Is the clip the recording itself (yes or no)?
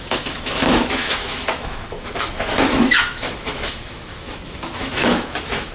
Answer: no